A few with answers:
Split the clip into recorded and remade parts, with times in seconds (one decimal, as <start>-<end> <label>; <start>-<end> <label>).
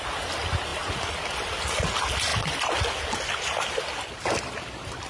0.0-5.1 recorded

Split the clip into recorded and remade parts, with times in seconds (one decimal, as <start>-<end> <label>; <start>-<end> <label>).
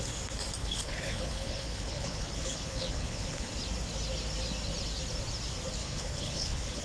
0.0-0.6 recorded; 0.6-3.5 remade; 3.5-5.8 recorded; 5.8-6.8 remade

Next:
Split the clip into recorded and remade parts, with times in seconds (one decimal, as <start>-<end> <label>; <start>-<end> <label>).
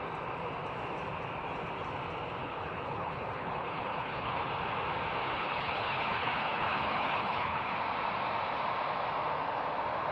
0.0-2.4 recorded; 2.4-4.5 remade; 4.5-5.2 recorded; 5.2-7.7 remade; 7.7-10.1 recorded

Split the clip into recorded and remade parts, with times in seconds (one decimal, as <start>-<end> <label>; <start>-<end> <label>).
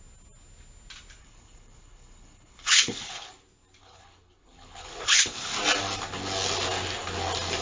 0.0-1.2 recorded; 1.2-3.3 remade; 3.3-3.8 recorded; 3.8-5.5 remade; 5.5-7.6 recorded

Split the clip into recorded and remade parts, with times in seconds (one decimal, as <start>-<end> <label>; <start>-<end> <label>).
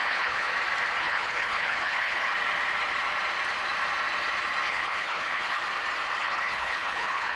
0.0-0.5 remade; 0.5-1.0 recorded; 1.0-2.3 remade; 2.3-4.7 recorded; 4.7-5.6 remade; 5.6-6.2 recorded; 6.2-7.4 remade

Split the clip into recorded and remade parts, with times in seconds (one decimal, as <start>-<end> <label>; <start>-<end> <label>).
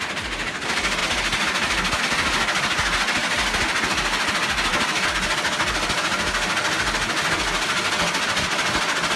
0.0-9.2 recorded